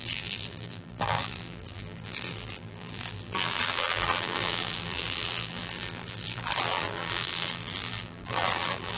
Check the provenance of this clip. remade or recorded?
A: remade